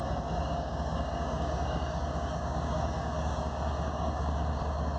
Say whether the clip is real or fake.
fake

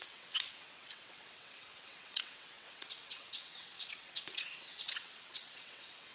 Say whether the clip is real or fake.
fake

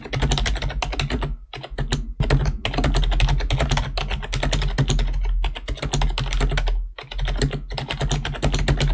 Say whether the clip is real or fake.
real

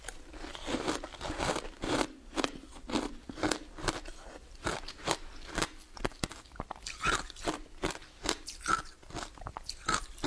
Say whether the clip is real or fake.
real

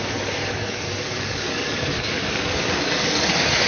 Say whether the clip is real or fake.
fake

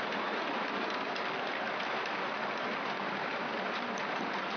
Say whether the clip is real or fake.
real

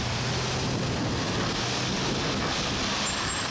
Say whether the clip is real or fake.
real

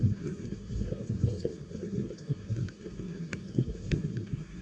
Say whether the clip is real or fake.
fake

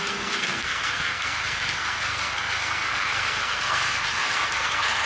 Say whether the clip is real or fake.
fake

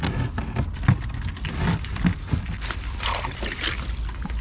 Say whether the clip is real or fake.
real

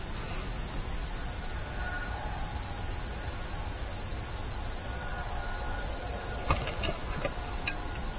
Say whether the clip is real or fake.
real